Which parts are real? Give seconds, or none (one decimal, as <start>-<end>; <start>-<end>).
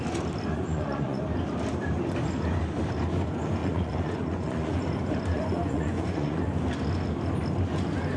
0.0-0.5; 1.2-3.6; 4.8-5.3; 6.4-8.2